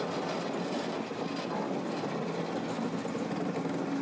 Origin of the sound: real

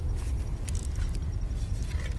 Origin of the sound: real